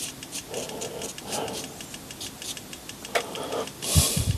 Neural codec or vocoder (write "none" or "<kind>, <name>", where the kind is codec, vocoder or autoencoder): none